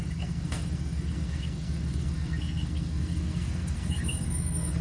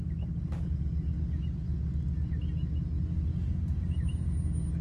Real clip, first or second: second